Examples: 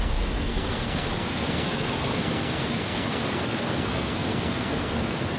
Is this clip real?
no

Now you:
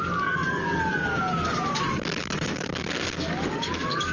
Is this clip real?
no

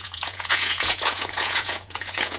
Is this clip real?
no